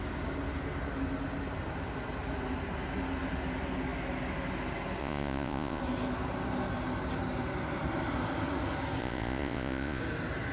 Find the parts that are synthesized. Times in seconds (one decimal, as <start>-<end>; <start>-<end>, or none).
5.0-5.8; 9.0-10.0